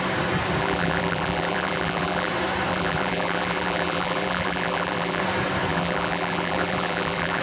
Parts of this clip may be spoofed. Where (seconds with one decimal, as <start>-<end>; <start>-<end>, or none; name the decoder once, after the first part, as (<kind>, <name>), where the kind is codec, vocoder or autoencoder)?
0.6-2.3 (vocoder, BigVGAN v2); 2.7-5.2; 5.7-7.4